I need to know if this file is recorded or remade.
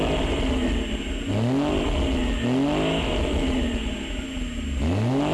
recorded